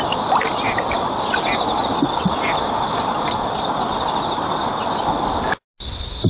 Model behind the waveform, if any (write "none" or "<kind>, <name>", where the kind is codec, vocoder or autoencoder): none